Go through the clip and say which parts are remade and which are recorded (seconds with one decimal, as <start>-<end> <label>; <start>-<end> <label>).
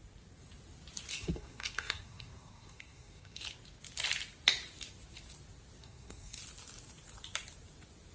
0.0-1.1 recorded; 1.1-3.4 remade; 3.4-5.8 recorded; 5.8-6.4 remade; 6.4-8.1 recorded